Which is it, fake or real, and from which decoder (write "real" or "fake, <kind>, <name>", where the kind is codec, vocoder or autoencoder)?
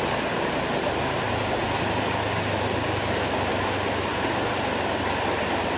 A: real